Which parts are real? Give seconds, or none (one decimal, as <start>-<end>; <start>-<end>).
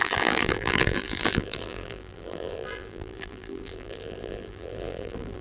none